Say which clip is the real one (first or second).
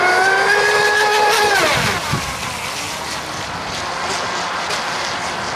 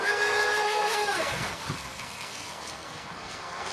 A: first